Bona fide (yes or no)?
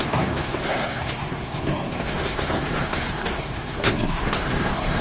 no